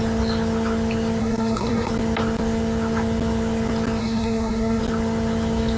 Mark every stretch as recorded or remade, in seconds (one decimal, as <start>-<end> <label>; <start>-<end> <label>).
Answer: 0.0-1.2 recorded; 1.2-1.9 remade; 1.9-4.0 recorded; 4.0-4.8 remade; 4.8-5.8 recorded